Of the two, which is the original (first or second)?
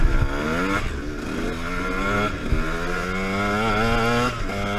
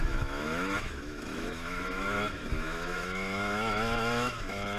first